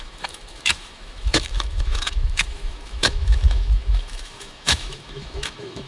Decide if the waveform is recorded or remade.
remade